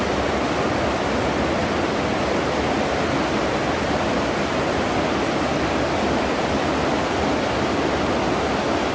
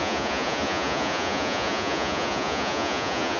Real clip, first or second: first